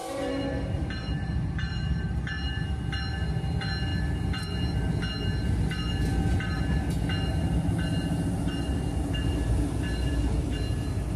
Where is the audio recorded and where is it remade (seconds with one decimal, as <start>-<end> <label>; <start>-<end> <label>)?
0.0-2.9 remade; 2.9-11.2 recorded